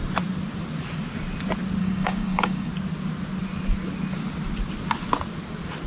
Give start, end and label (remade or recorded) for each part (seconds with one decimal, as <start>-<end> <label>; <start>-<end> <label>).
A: 0.0-1.8 recorded; 1.8-2.7 remade; 2.7-5.9 recorded